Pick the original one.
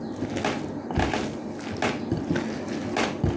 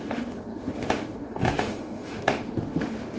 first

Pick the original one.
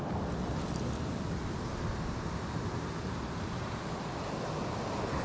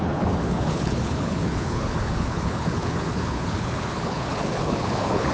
first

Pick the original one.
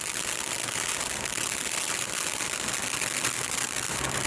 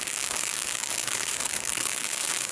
first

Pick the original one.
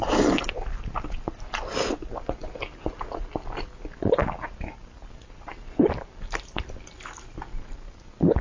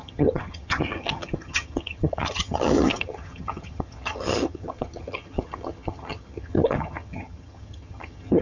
first